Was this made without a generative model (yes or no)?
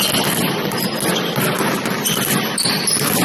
yes